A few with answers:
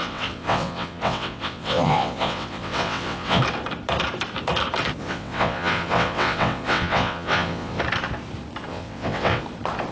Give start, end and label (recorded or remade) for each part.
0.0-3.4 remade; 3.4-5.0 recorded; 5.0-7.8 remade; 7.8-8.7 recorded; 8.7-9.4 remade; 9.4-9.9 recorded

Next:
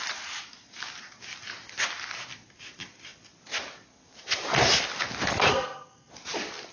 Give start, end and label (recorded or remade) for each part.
0.0-5.5 recorded; 5.5-6.1 remade; 6.1-6.7 recorded

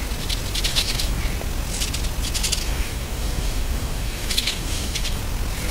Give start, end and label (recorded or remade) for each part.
0.0-0.7 recorded; 0.7-1.2 remade; 1.2-2.6 recorded; 2.6-5.2 remade; 5.2-5.7 recorded

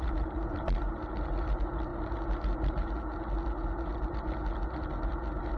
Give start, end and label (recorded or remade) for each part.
0.0-5.6 recorded

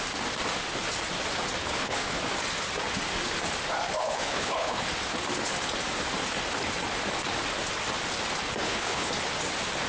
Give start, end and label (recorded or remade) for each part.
0.0-1.6 recorded; 1.6-2.2 remade; 2.2-4.0 recorded; 4.0-4.8 remade; 4.8-8.6 recorded; 8.6-9.1 remade; 9.1-9.9 recorded